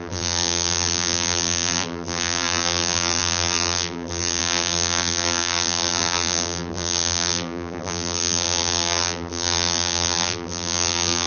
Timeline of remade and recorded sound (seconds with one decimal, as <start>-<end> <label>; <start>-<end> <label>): 0.0-11.3 remade